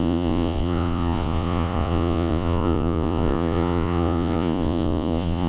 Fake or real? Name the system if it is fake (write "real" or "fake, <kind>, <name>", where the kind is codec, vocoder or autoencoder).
fake, vocoder, Vocos